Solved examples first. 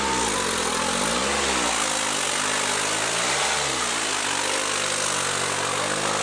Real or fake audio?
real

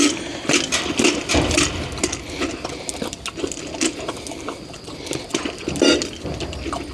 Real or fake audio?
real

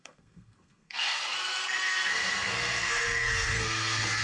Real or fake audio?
fake